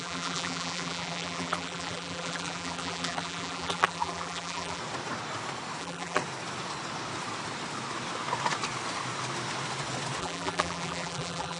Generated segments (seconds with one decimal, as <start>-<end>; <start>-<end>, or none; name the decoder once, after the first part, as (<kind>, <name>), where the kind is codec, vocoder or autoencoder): 0.0-4.8 (vocoder, BigVGAN v2); 5.8-6.2; 10.2-11.6